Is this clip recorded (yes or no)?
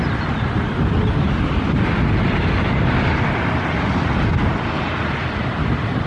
yes